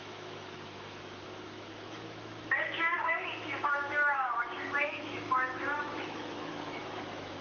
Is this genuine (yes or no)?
no